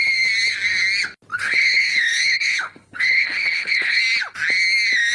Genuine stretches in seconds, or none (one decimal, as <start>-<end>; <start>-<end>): 0.0-1.3; 4.0-5.1